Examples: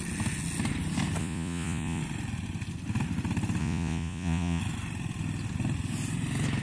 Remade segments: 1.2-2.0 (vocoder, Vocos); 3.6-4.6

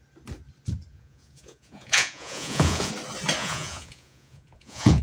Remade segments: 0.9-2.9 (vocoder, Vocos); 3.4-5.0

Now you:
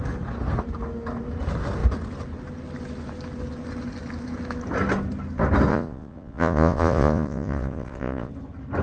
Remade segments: 5.7-8.3 (vocoder, Vocos)

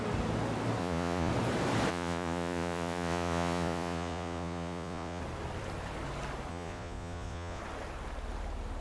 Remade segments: 0.8-1.3 (vocoder, Vocos); 1.9-5.2; 6.5-7.6